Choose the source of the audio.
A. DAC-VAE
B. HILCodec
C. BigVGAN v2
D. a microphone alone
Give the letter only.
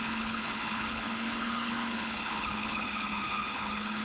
B